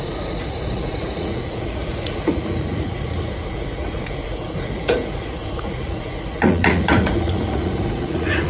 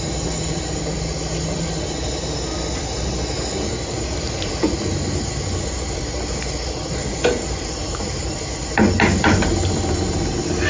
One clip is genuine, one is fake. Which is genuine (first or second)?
second